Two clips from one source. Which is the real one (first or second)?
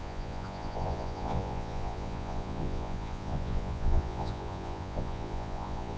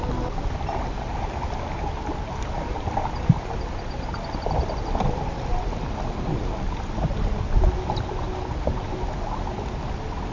second